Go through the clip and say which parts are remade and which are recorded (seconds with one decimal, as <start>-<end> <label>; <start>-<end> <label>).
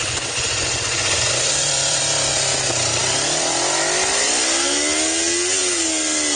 0.0-2.0 remade; 2.0-6.4 recorded